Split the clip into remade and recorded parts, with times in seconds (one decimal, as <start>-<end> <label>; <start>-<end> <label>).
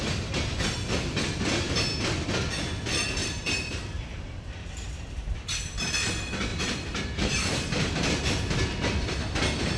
0.0-3.2 recorded; 3.2-4.9 remade; 4.9-6.5 recorded; 6.5-8.2 remade; 8.2-9.8 recorded